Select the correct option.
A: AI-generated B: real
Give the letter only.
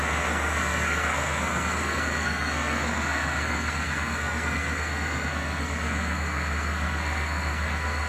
A